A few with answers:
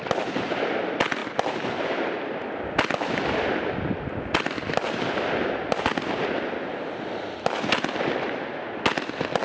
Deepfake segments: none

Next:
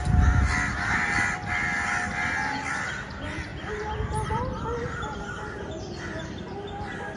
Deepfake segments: 0.7-1.5 (vocoder, BigVGAN v2); 3.5-4.4

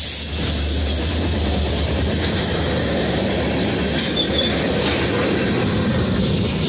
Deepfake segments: none

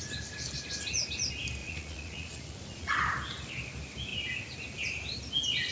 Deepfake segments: 1.6-2.9 (vocoder, Vocos)

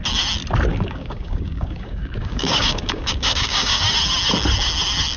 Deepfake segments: 0.7-3.8 (codec, DAC)

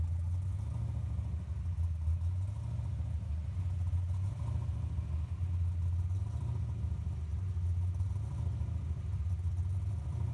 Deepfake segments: none